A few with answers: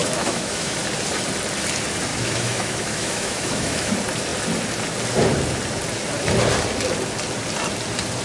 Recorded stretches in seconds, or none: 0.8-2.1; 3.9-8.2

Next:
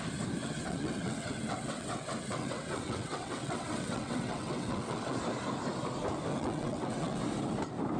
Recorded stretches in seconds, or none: 0.0-0.4; 5.2-6.3; 7.2-8.0

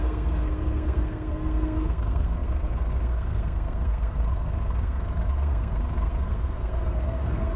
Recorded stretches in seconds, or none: none